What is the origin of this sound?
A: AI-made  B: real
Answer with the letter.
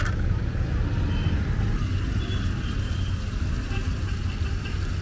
B